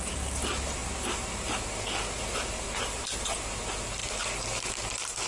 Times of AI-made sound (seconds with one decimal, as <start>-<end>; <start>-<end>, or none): none